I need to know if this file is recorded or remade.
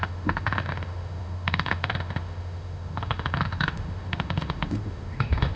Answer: remade